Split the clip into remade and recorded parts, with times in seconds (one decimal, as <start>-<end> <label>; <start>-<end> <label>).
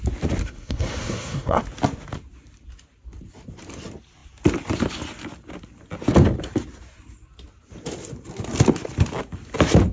0.0-0.4 recorded; 0.4-1.6 remade; 1.6-9.9 recorded